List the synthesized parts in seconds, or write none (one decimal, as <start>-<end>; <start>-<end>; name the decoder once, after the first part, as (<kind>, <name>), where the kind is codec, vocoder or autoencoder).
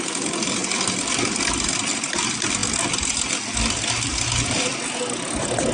none